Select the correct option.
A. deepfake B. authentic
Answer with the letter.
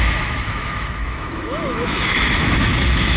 A